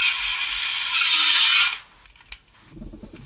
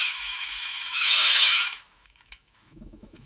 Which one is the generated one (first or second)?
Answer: second